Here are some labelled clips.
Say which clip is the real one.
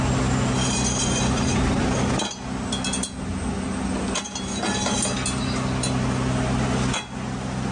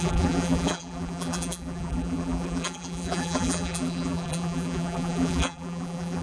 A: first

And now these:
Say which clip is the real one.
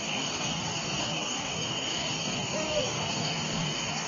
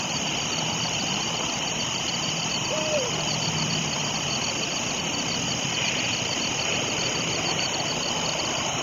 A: second